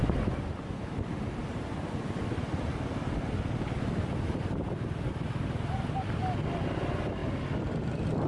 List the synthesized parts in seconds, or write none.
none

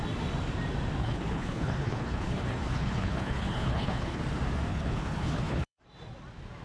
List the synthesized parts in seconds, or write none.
1.0-4.2; 4.7-5.8

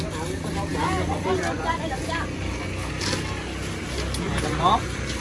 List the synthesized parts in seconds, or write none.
none

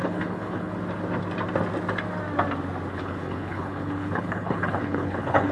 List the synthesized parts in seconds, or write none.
0.0-0.8; 2.9-5.5

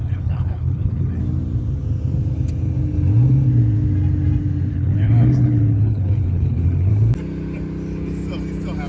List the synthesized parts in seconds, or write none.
0.0-1.2; 4.7-6.9

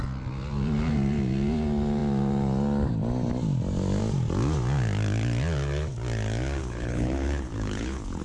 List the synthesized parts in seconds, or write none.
6.6-8.2

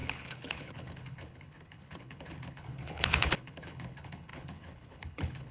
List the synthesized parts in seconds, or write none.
0.0-5.5